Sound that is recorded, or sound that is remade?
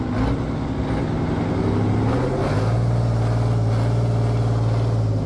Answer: recorded